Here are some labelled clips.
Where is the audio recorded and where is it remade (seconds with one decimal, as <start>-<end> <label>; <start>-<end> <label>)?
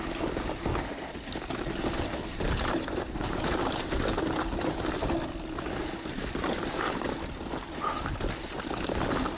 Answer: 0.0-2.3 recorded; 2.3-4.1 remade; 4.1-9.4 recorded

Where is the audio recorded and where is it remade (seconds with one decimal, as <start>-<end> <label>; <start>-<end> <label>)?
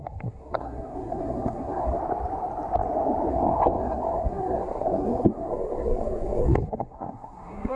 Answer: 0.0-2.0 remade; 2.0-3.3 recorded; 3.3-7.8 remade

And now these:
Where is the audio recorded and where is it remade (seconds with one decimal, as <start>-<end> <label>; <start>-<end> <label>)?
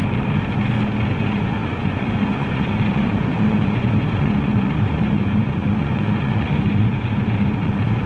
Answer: 0.0-1.1 recorded; 1.1-8.1 remade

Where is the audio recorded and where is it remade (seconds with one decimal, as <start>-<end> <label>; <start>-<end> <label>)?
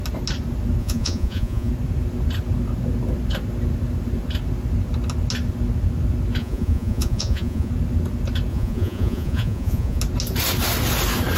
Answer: 0.0-0.8 recorded; 0.8-1.7 remade; 1.7-6.4 recorded; 6.4-7.7 remade; 7.7-8.5 recorded; 8.5-10.0 remade; 10.0-11.4 recorded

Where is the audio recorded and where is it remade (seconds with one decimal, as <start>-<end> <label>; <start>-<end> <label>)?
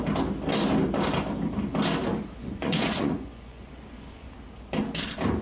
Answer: 0.0-2.4 recorded; 2.4-4.3 remade; 4.3-5.4 recorded